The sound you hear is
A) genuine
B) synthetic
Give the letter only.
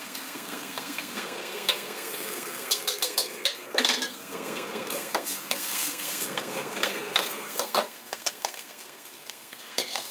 B